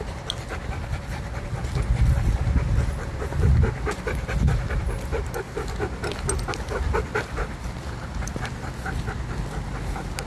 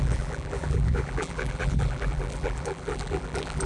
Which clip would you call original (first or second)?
first